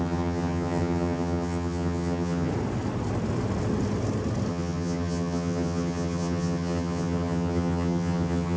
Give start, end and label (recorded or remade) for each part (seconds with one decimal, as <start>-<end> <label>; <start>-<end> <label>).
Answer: 0.0-2.5 remade; 2.5-4.5 recorded; 4.5-8.6 remade